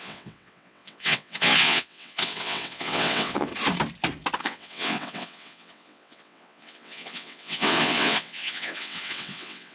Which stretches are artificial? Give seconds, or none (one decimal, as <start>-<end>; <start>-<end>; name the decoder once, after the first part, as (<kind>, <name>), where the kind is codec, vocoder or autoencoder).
0.0-3.5 (vocoder, WaveNeXt); 4.4-9.7